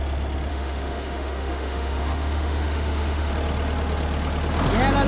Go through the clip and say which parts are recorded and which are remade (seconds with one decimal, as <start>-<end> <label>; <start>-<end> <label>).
0.0-0.5 recorded; 0.5-3.3 remade; 3.3-5.1 recorded